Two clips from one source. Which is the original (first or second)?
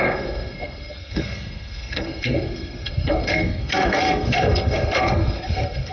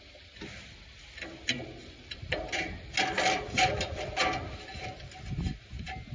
second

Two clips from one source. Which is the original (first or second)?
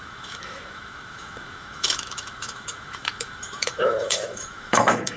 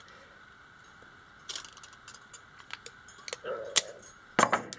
second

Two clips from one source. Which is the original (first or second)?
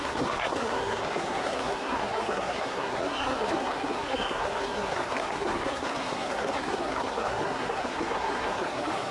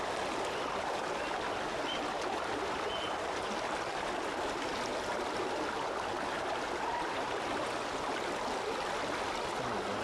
second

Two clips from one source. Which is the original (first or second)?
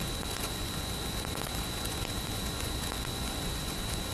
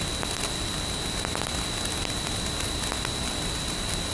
second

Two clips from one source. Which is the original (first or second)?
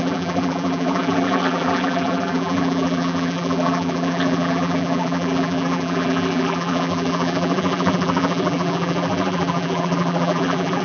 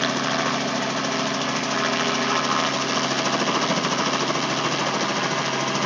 second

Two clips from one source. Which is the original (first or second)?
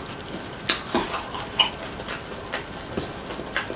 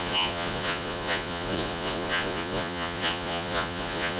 first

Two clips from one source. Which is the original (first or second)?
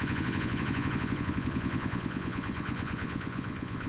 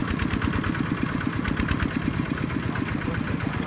second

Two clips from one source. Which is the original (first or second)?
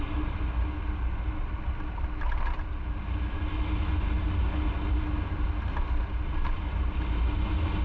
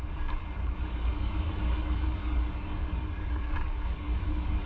first